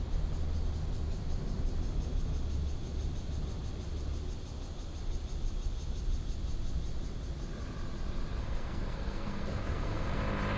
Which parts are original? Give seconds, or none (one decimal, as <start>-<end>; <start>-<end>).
0.0-8.4; 10.2-10.6